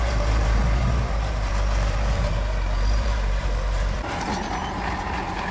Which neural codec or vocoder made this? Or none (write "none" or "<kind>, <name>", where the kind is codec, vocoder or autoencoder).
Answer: vocoder, BigVGAN v2